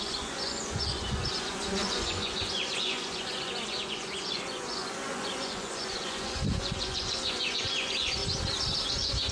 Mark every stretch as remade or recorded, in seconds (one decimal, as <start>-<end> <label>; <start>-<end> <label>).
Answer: 0.0-8.2 remade; 8.2-8.9 recorded; 8.9-9.3 remade